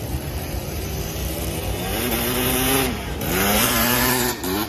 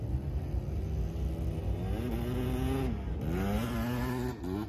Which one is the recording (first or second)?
second